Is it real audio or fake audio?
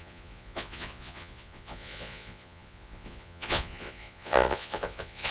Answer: fake